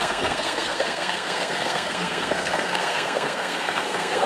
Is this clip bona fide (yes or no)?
no